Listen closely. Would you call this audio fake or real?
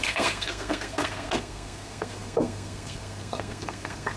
fake